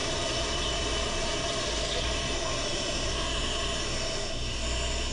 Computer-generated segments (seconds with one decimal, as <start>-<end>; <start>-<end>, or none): 0.0-2.3; 2.7-3.4

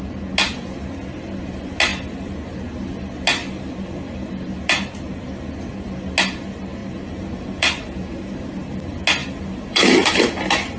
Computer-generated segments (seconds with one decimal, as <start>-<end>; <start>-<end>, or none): 6.8-8.6; 9.2-10.3

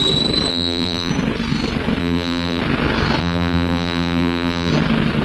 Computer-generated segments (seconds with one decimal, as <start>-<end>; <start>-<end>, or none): 0.5-1.1; 2.0-2.6; 3.2-4.7

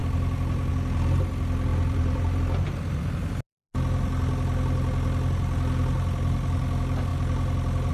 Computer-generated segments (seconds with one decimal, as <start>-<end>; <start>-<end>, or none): 1.7-2.4

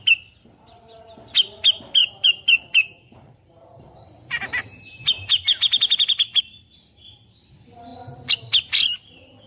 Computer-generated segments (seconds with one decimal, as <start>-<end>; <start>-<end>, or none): 2.0-6.4

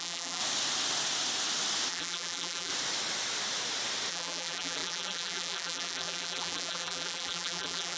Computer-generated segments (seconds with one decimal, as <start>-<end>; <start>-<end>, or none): 0.0-0.4; 1.9-2.7; 4.1-8.0